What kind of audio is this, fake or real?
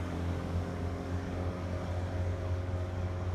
fake